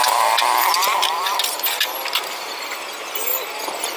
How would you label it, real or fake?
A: real